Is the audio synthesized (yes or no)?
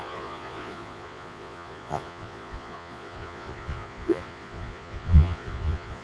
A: yes